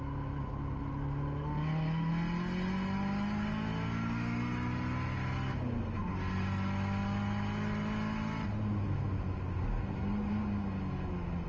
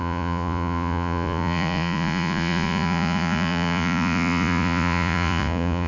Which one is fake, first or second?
second